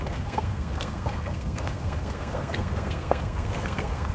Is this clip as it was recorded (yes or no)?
no